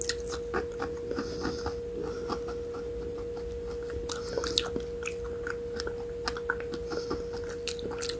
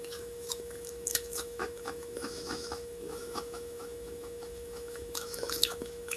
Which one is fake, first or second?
second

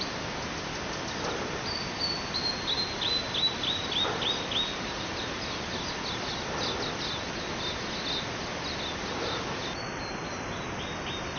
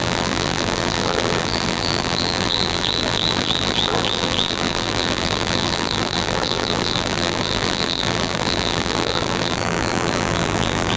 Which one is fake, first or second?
second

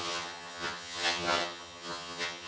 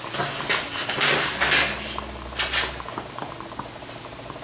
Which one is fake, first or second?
first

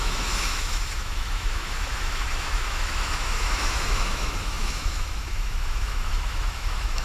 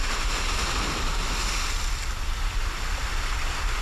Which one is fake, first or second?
first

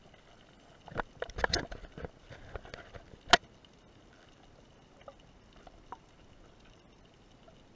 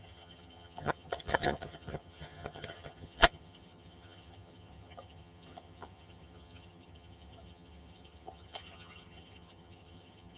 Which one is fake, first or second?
second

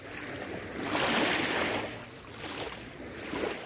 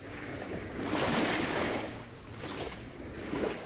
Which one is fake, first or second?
second